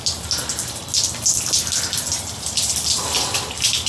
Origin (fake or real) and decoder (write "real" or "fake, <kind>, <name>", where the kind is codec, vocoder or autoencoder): real